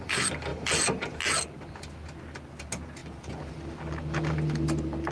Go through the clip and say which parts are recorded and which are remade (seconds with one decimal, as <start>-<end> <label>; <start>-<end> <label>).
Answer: 0.0-5.1 recorded